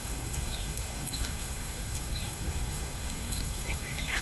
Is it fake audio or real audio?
fake